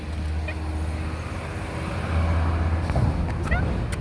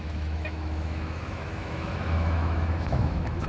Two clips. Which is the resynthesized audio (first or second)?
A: second